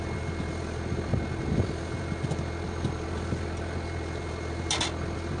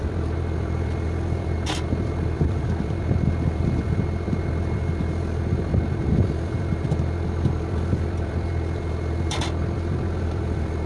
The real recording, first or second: first